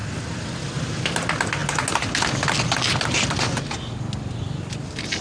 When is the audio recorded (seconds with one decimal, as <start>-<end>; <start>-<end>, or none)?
0.0-5.2